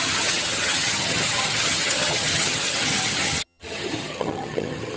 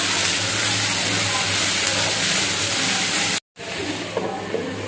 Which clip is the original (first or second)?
second